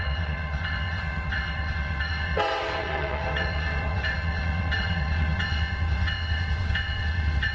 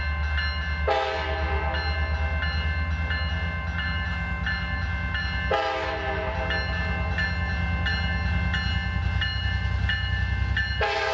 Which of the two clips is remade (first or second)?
first